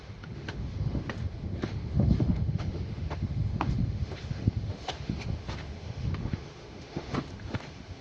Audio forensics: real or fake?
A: fake